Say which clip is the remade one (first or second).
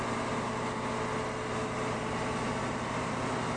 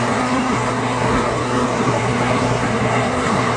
second